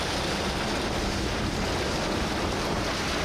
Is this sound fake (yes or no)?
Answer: no